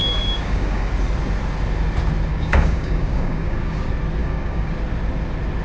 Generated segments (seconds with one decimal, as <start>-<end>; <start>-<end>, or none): 0.0-0.9; 2.3-3.8; 4.2-4.7